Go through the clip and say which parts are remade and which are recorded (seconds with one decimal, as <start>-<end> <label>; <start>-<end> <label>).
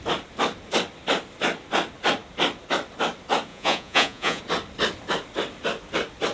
0.0-3.5 recorded; 3.5-4.4 remade; 4.4-6.3 recorded